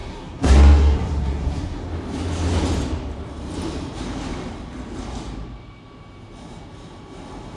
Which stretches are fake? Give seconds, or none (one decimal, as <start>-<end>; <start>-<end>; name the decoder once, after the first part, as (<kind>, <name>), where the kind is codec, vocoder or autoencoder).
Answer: 0.0-1.8 (codec, SNAC)